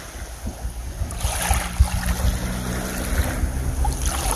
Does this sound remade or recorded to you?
recorded